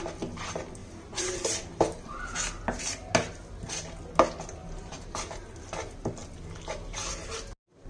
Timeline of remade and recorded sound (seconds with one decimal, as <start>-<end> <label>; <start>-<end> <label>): 0.0-0.8 recorded; 0.8-2.2 remade; 2.2-4.6 recorded; 4.6-5.3 remade; 5.3-7.9 recorded